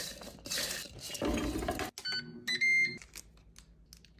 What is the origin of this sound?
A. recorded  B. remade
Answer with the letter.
A